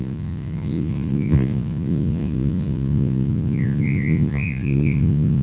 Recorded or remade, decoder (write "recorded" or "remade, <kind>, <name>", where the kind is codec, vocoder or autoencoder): remade, vocoder, Vocos